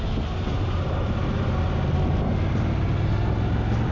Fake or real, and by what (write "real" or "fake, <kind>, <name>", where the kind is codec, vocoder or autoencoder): real